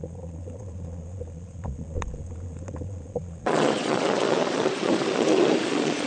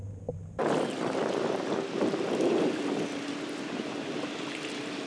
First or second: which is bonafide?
second